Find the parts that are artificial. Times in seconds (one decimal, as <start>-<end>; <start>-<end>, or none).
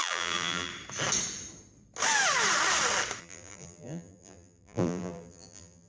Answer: 0.0-0.7; 3.2-5.9